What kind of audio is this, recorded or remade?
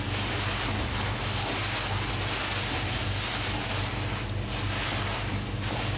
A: recorded